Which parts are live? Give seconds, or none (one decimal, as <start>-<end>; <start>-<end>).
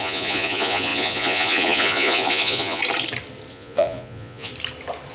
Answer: 2.8-3.5; 4.5-5.1